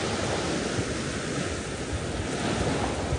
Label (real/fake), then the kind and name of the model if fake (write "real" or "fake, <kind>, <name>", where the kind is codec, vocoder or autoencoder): real